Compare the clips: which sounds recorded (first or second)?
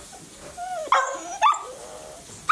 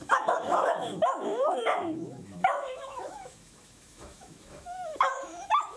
first